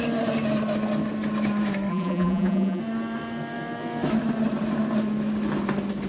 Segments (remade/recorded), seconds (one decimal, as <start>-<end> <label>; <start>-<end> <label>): 0.0-1.9 recorded; 1.9-2.8 remade; 2.8-6.1 recorded